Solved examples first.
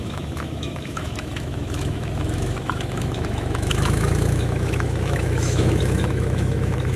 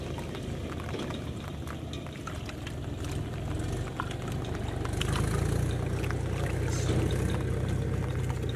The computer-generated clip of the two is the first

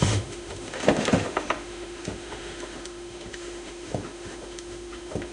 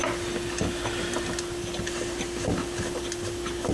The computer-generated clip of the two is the first